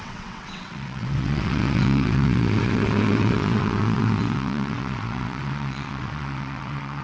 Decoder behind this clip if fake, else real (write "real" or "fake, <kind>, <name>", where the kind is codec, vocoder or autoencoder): fake, vocoder, WaveNeXt